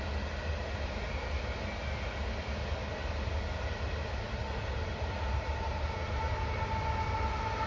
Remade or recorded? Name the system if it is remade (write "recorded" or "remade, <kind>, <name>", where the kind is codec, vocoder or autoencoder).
recorded